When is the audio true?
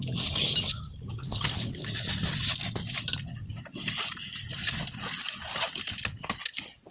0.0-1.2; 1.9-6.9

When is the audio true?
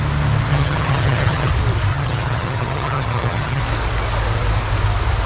0.0-0.5; 1.5-1.9; 3.6-5.3